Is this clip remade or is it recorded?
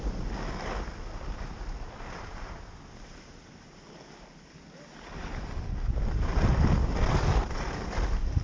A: recorded